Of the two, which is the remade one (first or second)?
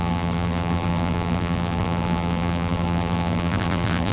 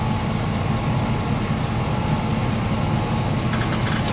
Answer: first